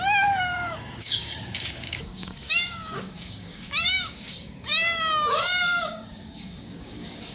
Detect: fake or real fake